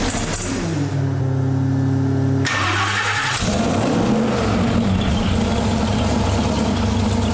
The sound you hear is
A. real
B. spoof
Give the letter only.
A